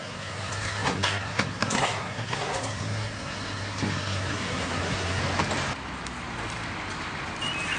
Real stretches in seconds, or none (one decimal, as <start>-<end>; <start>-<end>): 5.2-7.8